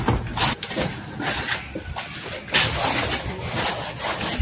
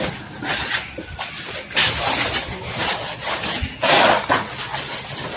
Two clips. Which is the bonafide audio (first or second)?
first